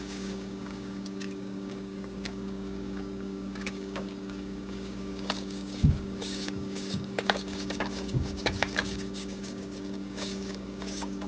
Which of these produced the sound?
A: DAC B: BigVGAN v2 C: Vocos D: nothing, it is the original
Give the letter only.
A